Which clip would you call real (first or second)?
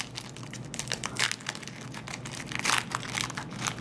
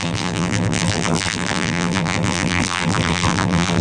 first